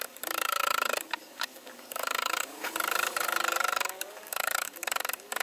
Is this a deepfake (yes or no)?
yes